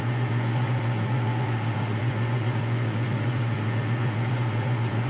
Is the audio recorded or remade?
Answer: remade